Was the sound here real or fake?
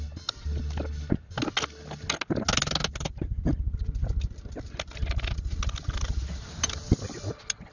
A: real